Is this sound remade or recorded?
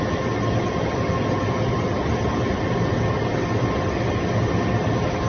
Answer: recorded